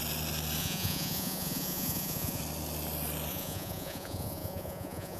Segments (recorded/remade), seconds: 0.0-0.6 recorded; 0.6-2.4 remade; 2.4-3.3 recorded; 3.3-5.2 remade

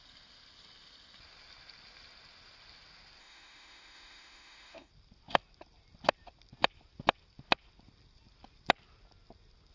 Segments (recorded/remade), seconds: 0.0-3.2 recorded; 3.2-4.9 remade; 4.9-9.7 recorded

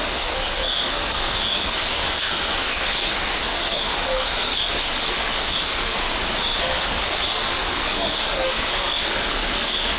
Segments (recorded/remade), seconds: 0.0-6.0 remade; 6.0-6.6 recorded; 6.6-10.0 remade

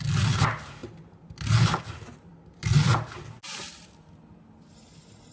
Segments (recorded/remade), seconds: 0.0-5.3 recorded

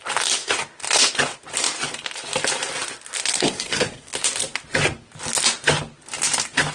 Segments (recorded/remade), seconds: 0.0-3.3 recorded; 3.3-4.1 remade; 4.1-6.7 recorded

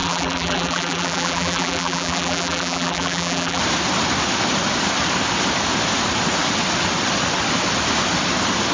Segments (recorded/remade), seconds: 0.0-3.6 remade; 3.6-8.7 recorded

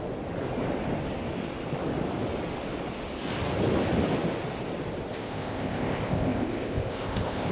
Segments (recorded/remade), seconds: 0.0-5.1 recorded; 5.1-7.5 remade

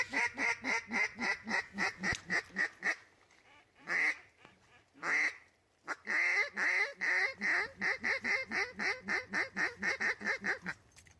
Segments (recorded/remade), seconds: 0.0-11.2 recorded